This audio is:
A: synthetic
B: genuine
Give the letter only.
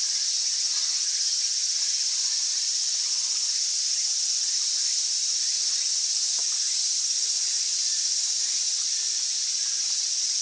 B